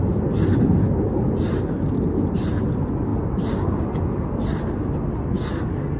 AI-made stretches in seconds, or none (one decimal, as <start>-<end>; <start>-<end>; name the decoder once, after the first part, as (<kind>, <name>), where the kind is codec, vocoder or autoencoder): none